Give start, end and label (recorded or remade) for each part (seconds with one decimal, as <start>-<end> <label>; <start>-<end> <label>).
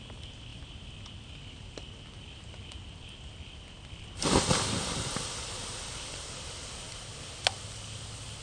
0.0-8.4 recorded